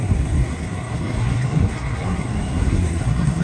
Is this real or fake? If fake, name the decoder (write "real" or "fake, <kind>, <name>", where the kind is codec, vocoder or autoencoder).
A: fake, codec, SNAC